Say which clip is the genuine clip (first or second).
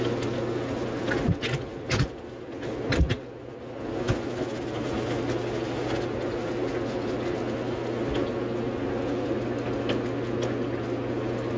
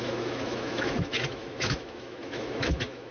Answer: first